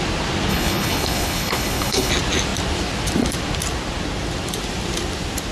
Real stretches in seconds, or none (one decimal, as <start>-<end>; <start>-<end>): 0.0-0.5; 2.1-5.5